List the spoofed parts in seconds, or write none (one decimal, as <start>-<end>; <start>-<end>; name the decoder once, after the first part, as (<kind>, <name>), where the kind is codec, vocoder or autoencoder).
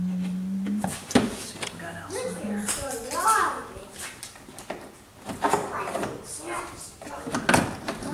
3.6-4.1 (vocoder, BigVGAN v2); 5.6-7.1